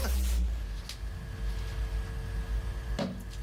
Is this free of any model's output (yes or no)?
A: yes